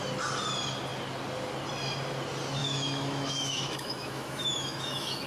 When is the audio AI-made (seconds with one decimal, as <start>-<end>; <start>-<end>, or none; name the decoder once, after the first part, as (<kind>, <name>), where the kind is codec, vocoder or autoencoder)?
2.6-5.3 (autoencoder, DAC-VAE)